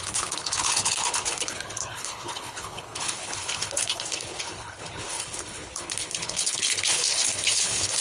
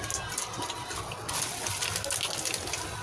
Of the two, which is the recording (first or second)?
second